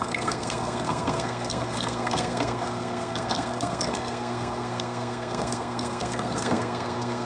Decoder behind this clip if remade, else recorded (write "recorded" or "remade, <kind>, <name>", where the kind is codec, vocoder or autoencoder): remade, codec, SNAC